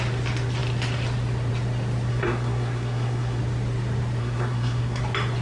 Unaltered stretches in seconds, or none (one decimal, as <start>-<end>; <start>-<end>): 0.0-2.1; 3.4-4.2; 5.0-5.4